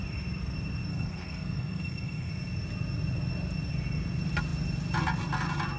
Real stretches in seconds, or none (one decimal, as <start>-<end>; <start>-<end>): 0.0-0.9; 2.3-5.8